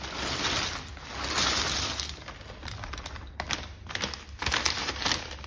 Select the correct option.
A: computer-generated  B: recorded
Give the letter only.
B